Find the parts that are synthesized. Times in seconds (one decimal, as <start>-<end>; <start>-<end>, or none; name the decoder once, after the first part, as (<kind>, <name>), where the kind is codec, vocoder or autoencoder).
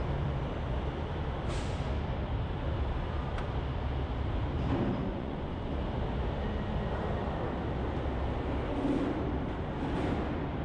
5.0-5.7 (vocoder, Vocos)